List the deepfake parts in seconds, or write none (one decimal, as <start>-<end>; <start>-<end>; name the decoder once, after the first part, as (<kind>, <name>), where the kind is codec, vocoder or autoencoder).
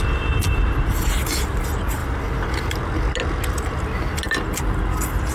none